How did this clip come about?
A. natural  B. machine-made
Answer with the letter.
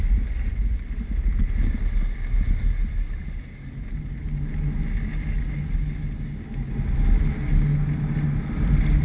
A